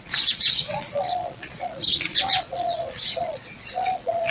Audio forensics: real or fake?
fake